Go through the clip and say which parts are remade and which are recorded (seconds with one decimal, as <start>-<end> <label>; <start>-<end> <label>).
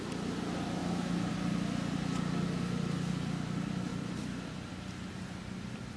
0.0-0.8 recorded; 0.8-1.3 remade; 1.3-6.0 recorded